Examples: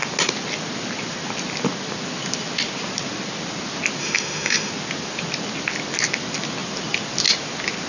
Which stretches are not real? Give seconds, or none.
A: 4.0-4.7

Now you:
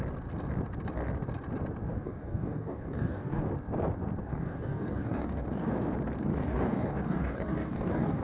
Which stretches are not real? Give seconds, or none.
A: 1.9-3.4; 4.2-5.7; 6.3-8.2

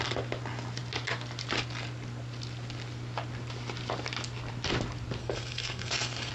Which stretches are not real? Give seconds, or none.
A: 5.2-6.3